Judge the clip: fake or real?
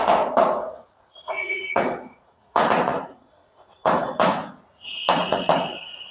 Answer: fake